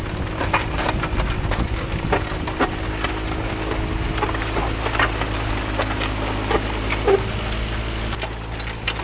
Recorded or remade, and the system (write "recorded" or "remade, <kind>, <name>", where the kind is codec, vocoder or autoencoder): recorded